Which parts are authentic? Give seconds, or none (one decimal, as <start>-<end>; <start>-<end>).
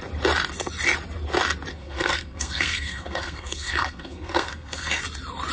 0.0-1.7; 5.0-5.5